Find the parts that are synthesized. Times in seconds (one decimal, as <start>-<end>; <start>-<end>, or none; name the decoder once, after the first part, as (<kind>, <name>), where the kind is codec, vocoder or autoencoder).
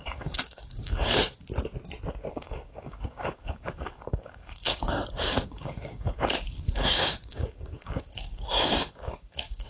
0.0-1.3 (codec, DAC); 2.3-9.7